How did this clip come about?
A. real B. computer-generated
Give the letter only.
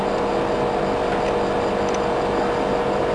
A